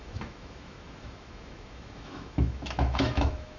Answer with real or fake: fake